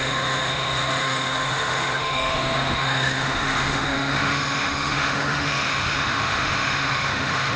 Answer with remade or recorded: remade